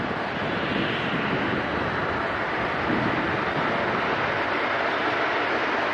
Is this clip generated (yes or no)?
no